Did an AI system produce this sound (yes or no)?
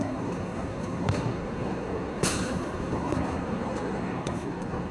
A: yes